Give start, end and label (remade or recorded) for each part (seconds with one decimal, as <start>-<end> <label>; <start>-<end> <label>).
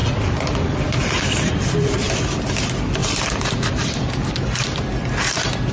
0.0-2.1 remade; 2.1-3.0 recorded; 3.0-4.1 remade; 4.1-5.7 recorded